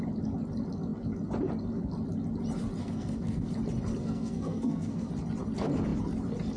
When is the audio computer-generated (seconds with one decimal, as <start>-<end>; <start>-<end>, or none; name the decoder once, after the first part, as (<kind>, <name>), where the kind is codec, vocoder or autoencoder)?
2.8-3.5 (codec, SNAC); 4.0-5.1